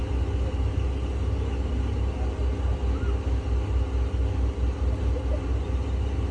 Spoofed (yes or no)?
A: no